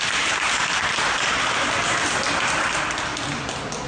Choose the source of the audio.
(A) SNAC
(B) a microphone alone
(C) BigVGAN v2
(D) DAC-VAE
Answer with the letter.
B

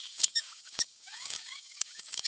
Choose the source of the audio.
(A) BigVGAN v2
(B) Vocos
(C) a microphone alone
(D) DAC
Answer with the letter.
D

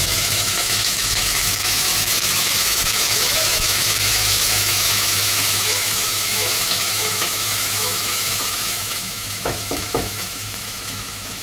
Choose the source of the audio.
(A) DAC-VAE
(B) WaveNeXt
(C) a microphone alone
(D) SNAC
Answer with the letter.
A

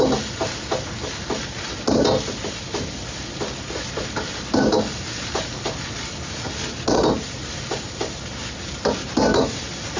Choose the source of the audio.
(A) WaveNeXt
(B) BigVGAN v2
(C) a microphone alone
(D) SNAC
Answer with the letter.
C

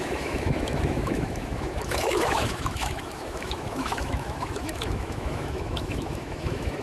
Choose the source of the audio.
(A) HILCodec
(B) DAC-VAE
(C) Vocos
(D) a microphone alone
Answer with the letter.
B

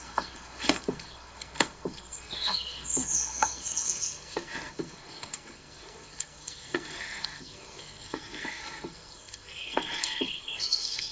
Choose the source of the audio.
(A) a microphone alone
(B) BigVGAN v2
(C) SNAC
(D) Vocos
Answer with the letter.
C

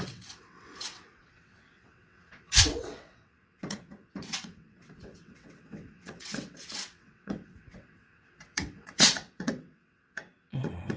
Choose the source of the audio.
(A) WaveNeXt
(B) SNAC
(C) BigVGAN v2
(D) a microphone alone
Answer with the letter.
A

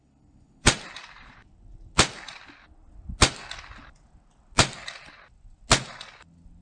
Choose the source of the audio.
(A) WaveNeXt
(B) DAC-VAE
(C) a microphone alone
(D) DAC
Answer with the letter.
C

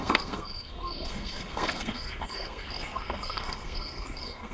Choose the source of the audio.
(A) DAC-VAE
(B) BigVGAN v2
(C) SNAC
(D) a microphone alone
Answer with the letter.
C